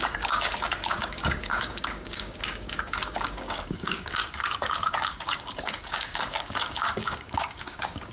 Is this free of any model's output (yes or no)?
no